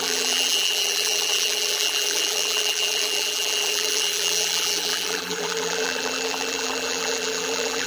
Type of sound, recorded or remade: remade